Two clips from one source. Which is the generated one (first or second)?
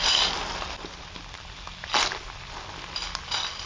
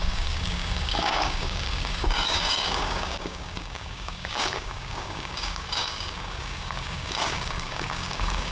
second